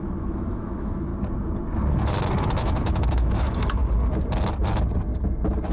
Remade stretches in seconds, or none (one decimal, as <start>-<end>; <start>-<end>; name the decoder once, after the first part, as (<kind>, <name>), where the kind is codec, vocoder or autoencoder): 0.0-1.1 (autoencoder, DAC-VAE); 2.6-3.8